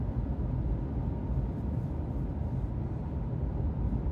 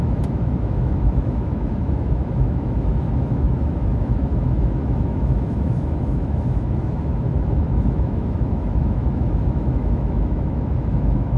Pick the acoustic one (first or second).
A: first